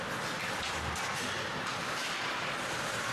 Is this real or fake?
real